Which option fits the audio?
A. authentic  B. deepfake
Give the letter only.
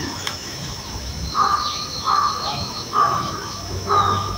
B